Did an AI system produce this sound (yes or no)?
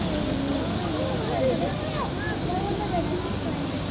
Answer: no